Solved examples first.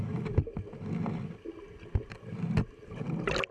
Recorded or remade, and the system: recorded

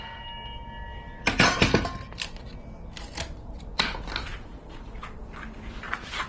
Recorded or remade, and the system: recorded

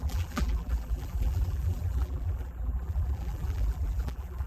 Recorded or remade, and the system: remade, vocoder, BigVGAN v2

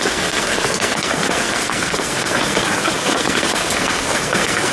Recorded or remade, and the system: remade, codec, SNAC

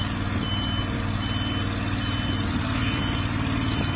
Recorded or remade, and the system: recorded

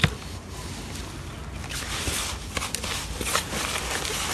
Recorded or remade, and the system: recorded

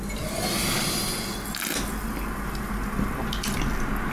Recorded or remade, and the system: recorded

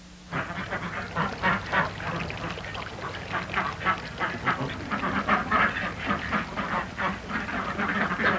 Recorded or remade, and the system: recorded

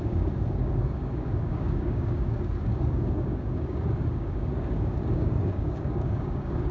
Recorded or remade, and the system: remade, codec, DAC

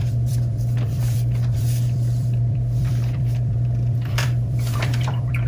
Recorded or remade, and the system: remade, vocoder, BigVGAN v2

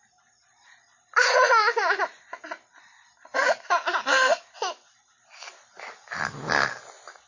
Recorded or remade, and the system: recorded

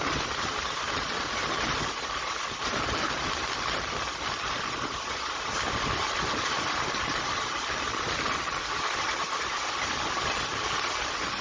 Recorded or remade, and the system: recorded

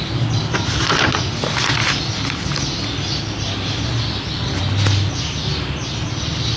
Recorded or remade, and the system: recorded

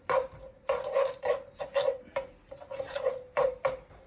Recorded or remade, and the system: recorded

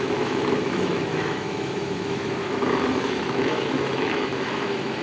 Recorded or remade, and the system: remade, autoencoder, DAC-VAE